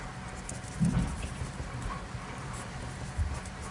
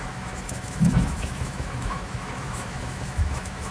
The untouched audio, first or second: first